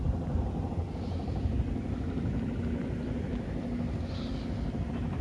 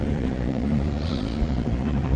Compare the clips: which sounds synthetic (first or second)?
second